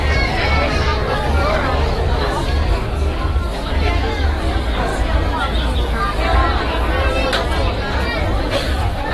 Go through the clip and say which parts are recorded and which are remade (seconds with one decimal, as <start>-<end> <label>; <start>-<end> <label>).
0.0-4.9 remade; 4.9-5.8 recorded; 5.8-6.4 remade; 6.4-8.4 recorded; 8.4-9.1 remade